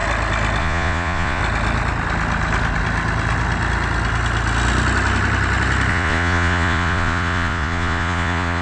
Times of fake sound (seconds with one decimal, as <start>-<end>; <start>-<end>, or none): 0.6-1.4; 5.9-8.6